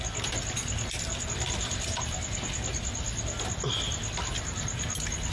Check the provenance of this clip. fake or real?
fake